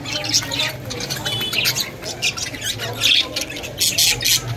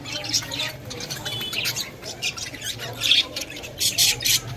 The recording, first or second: first